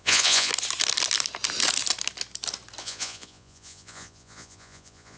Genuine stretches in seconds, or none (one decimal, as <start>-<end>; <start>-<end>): 0.5-2.8